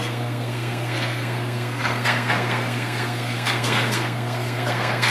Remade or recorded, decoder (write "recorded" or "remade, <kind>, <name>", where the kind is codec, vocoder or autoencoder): remade, codec, SNAC